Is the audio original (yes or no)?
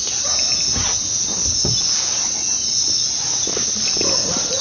yes